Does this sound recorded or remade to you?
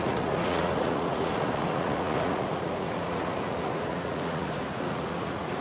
remade